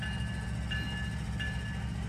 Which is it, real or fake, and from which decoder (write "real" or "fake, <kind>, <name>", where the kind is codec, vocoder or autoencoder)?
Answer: real